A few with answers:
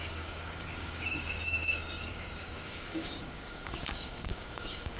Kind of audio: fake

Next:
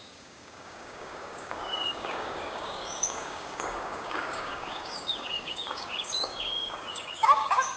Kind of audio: fake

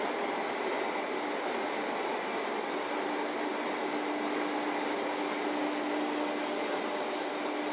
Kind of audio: real